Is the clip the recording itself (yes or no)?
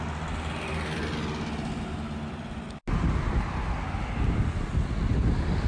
yes